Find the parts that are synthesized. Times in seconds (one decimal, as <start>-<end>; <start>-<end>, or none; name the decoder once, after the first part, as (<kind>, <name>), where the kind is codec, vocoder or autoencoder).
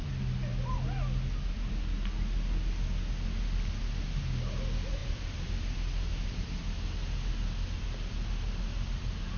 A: none